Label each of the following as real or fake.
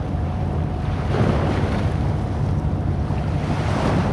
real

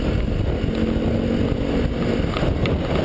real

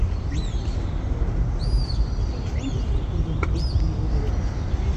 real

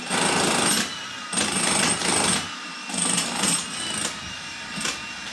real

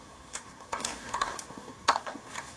fake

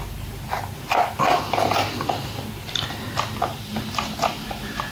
real